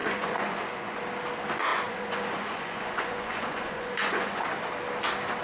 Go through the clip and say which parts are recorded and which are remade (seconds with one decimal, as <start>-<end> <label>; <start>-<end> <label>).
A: 0.0-1.0 remade; 1.0-1.7 recorded; 1.7-4.4 remade; 4.4-5.4 recorded